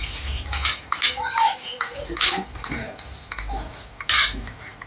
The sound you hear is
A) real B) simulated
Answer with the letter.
A